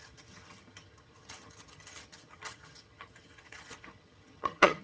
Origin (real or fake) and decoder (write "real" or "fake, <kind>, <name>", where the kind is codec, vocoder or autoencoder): fake, vocoder, HiFi-GAN